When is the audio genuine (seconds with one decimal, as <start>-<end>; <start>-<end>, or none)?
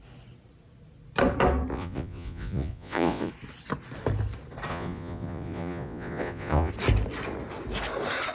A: 0.0-1.7; 3.3-4.7; 6.7-8.3